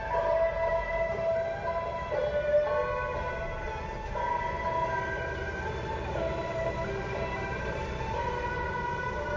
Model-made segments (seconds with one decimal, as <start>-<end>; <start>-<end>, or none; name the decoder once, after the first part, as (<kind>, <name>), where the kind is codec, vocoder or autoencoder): 0.0-2.2 (vocoder, BigVGAN v2); 6.4-9.4